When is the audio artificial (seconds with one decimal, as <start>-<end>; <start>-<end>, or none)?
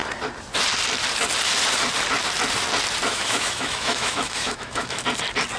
3.1-5.0